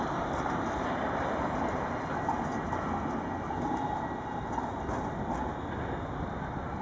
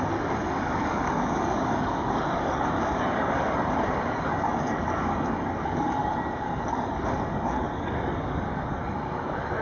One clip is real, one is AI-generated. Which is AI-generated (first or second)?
second